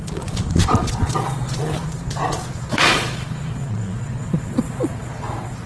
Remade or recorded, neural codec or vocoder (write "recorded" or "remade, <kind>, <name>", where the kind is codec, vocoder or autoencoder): remade, vocoder, Vocos